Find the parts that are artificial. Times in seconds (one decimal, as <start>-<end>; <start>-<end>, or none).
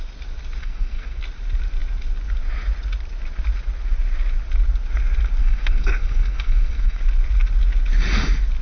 0.6-1.2; 5.4-7.0